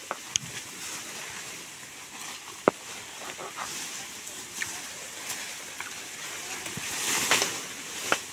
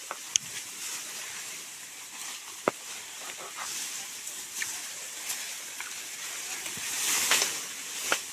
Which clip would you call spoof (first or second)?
second